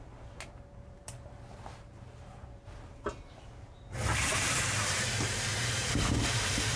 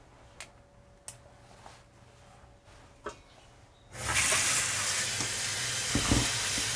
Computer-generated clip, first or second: first